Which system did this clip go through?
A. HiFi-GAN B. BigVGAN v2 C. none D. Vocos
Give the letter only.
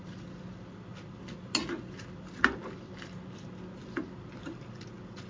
C